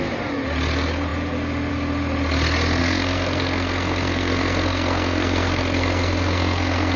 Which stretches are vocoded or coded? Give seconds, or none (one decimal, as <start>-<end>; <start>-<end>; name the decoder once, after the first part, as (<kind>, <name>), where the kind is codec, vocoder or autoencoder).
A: 2.8-7.0 (codec, SNAC)